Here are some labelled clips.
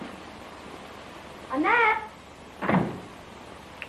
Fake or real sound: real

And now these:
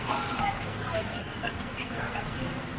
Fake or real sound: fake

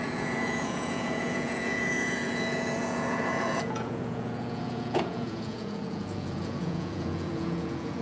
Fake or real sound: fake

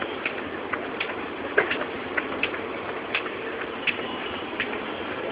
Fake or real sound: real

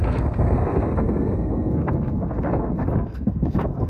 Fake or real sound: fake